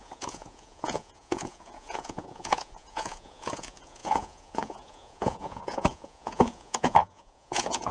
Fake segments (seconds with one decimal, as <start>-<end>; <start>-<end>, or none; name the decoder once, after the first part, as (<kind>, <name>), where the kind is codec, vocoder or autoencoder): 0.0-7.9 (vocoder, Vocos)